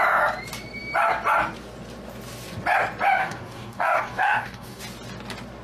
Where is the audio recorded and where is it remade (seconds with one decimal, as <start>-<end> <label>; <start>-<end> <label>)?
0.0-3.2 recorded; 3.2-4.8 remade; 4.8-5.6 recorded